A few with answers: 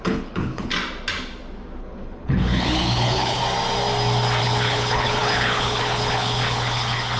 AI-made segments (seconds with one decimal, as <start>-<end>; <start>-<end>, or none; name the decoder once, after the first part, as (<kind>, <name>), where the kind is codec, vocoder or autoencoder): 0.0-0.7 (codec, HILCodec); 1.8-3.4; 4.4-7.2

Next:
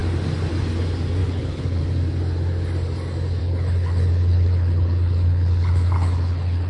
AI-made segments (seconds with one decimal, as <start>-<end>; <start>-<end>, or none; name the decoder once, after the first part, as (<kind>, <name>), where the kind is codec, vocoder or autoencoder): 1.2-1.8 (codec, HILCodec); 3.4-6.7

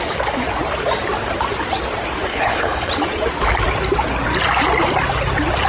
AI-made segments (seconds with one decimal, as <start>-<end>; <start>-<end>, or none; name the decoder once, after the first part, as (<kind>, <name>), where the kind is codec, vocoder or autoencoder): 2.3-2.9 (codec, HILCodec)